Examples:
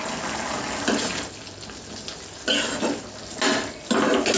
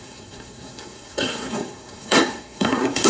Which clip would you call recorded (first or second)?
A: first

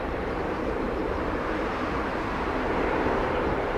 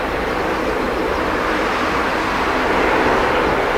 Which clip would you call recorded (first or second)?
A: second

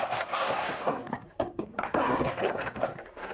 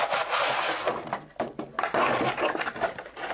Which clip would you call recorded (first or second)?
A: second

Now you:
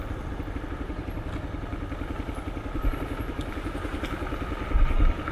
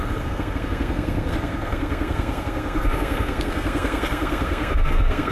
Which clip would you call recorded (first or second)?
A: first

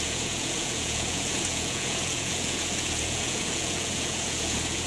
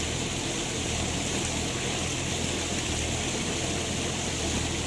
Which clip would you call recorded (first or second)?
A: second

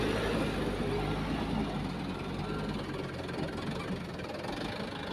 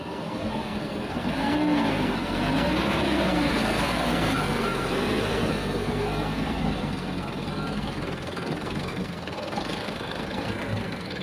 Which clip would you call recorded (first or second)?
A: first